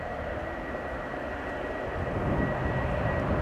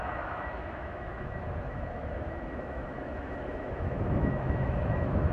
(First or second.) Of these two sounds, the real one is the first